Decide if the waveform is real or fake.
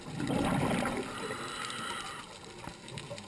real